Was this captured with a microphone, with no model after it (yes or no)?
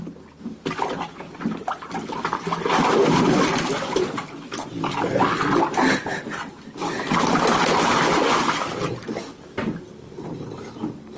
yes